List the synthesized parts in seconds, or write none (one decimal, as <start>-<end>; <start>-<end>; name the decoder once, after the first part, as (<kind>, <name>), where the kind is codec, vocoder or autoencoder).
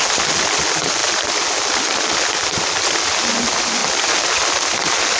none